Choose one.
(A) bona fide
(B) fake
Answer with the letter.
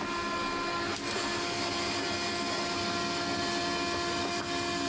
A